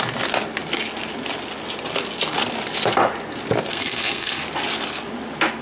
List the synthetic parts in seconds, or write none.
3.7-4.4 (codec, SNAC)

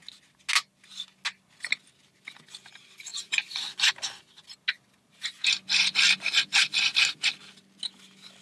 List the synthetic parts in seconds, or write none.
3.1-3.9 (vocoder, Vocos)